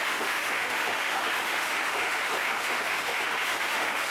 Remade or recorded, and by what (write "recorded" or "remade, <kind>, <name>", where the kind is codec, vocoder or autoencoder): remade, autoencoder, DAC-VAE